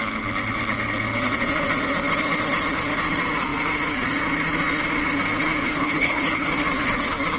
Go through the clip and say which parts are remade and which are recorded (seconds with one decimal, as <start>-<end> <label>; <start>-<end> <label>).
0.0-5.6 recorded; 5.6-6.5 remade; 6.5-7.4 recorded